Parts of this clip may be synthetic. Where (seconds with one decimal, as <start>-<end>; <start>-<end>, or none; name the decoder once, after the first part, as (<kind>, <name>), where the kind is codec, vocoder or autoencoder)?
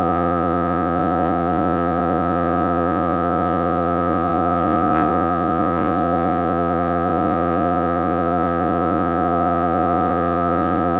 0.0-11.0 (vocoder, Vocos)